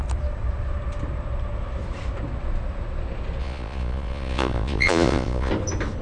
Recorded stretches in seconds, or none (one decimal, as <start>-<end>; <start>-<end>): 0.0-3.4; 5.5-6.0